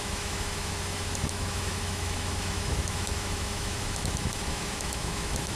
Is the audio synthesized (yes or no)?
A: yes